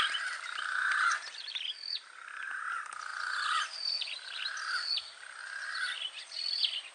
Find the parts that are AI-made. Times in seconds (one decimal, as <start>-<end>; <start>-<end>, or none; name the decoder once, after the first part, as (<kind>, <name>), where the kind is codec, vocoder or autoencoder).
none